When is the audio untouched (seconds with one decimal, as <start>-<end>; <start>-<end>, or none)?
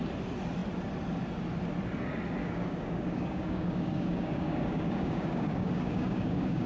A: 0.0-2.4